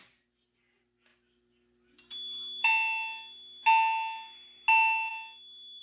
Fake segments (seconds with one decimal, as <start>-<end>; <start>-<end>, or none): none